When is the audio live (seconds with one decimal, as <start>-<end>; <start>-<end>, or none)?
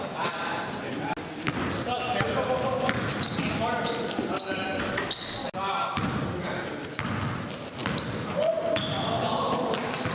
0.0-10.1